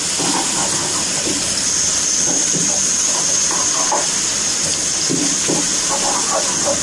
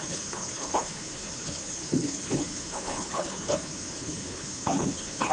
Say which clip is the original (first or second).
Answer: first